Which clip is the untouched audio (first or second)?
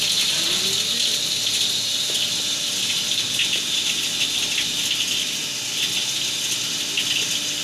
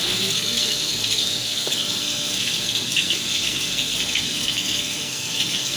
first